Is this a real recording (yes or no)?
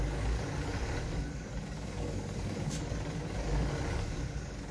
no